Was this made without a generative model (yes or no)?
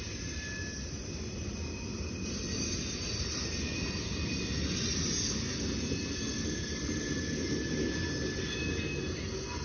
yes